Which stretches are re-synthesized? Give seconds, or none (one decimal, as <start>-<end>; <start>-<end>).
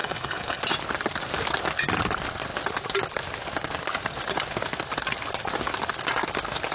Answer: 0.0-0.6